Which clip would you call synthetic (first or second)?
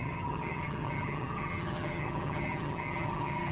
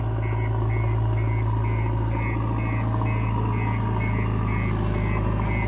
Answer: first